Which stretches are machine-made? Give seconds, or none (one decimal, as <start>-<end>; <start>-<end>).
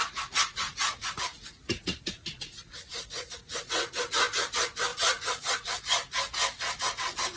0.0-3.9; 4.9-5.8